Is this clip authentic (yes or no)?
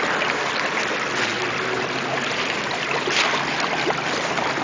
yes